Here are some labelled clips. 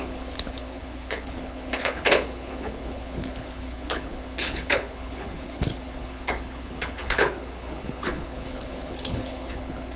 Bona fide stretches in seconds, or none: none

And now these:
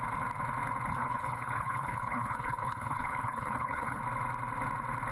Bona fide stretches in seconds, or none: 0.0-0.9; 4.0-5.1

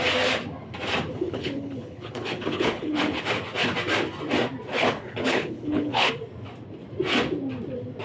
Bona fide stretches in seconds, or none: 0.0-1.1; 3.2-4.7; 6.1-8.0

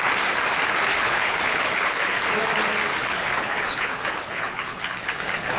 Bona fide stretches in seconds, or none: 0.0-0.9; 2.3-2.9

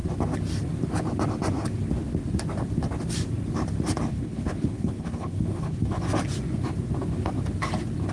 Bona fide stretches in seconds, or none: 0.0-4.1; 6.0-8.1

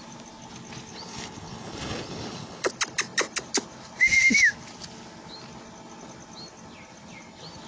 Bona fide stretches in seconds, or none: 0.0-0.9; 2.7-7.7

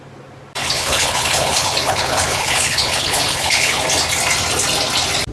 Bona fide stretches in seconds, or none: 0.0-0.6; 3.8-5.3

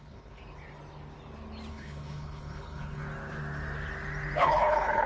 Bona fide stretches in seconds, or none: 0.4-1.7; 3.0-4.4